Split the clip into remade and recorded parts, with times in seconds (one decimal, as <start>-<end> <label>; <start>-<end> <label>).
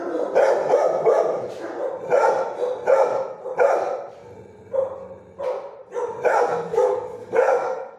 0.0-6.7 recorded; 6.7-8.0 remade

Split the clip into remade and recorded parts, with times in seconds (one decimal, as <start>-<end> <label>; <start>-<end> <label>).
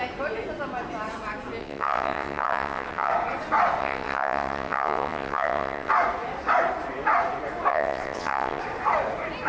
0.0-1.6 recorded; 1.6-3.1 remade; 3.1-3.8 recorded; 3.8-5.9 remade; 5.9-7.7 recorded; 7.7-8.6 remade; 8.6-9.5 recorded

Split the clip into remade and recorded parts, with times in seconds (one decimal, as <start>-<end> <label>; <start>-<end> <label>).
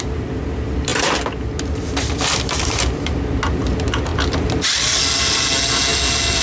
0.0-6.4 recorded